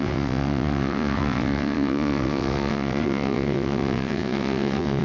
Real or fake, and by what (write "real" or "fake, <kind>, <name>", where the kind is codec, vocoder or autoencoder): fake, vocoder, WaveNeXt